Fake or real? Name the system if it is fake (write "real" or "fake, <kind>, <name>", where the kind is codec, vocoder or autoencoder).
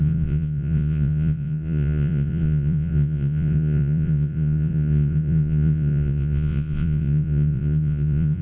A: fake, vocoder, Vocos